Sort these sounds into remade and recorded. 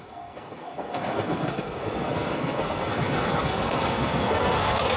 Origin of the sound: remade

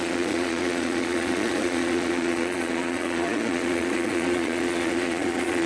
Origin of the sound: remade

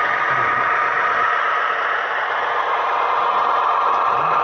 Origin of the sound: remade